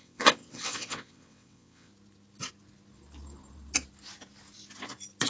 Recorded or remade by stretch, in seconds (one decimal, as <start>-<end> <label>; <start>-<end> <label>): 0.0-1.9 remade; 1.9-5.3 recorded